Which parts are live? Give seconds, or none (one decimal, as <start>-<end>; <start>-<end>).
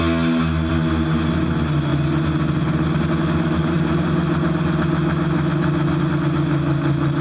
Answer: 0.0-7.2